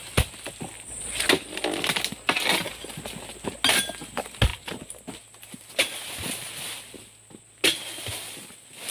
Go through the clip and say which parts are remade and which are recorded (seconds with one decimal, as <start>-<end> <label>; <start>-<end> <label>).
0.0-4.5 recorded; 4.5-5.1 remade; 5.1-8.9 recorded